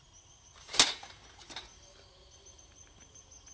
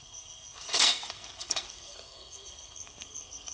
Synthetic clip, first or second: second